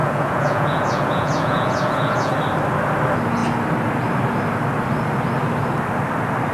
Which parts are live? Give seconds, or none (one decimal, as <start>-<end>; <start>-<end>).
2.3-6.5